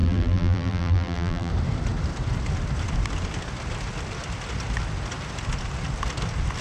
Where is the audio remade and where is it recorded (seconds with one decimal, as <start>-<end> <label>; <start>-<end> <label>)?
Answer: 0.0-1.5 remade; 1.5-6.6 recorded